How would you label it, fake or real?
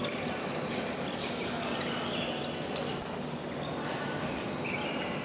real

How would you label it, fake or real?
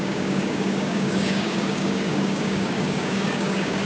fake